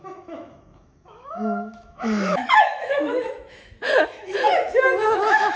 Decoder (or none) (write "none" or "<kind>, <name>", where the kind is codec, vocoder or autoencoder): autoencoder, DAC-VAE